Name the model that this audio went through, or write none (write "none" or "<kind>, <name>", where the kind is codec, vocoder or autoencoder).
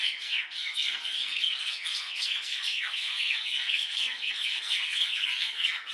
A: codec, SNAC